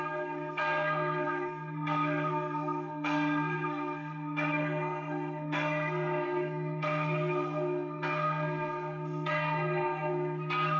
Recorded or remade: remade